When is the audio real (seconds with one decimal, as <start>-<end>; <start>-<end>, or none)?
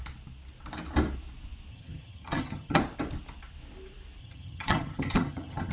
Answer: 0.0-1.7; 2.8-4.2